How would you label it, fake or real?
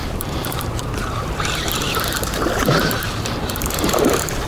fake